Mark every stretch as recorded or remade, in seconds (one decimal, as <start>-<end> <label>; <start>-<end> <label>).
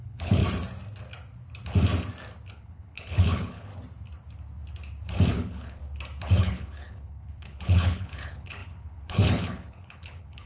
0.0-0.4 remade; 0.4-2.5 recorded; 2.5-3.7 remade; 3.7-5.3 recorded; 5.3-5.8 remade; 5.8-6.4 recorded; 6.4-10.5 remade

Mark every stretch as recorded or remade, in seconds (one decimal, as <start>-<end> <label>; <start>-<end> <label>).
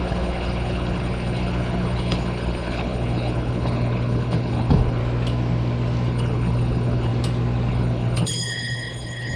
0.0-5.0 remade; 5.0-6.1 recorded; 6.1-7.1 remade; 7.1-7.7 recorded; 7.7-9.4 remade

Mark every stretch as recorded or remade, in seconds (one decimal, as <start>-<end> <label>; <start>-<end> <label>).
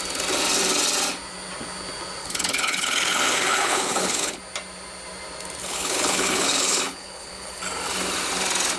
0.0-2.2 recorded; 2.2-4.4 remade; 4.4-5.6 recorded; 5.6-7.6 remade; 7.6-8.8 recorded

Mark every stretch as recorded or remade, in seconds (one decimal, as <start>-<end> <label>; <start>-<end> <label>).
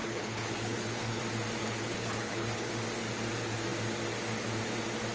0.0-1.2 remade; 1.2-1.6 recorded; 1.6-2.7 remade; 2.7-5.1 recorded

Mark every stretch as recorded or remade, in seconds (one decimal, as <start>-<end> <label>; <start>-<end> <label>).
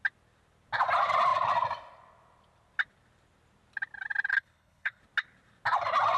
0.0-4.3 recorded; 4.3-5.0 remade; 5.0-6.2 recorded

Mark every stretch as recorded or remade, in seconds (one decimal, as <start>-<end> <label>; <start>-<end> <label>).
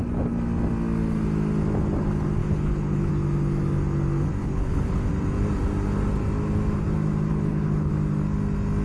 0.0-2.4 recorded; 2.4-3.1 remade; 3.1-4.4 recorded; 4.4-5.1 remade; 5.1-7.3 recorded; 7.3-7.9 remade; 7.9-8.8 recorded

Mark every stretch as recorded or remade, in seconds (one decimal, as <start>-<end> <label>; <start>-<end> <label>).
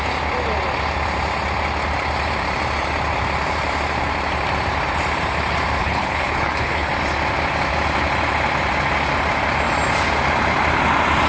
0.0-5.8 recorded; 5.8-6.9 remade; 6.9-11.3 recorded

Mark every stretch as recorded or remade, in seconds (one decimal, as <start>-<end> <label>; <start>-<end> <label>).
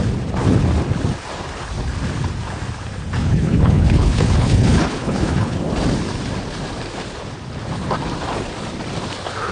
0.0-3.2 recorded; 3.2-5.6 remade; 5.6-9.5 recorded